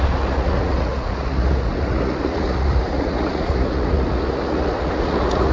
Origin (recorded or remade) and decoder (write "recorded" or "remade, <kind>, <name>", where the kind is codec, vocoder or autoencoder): remade, vocoder, Vocos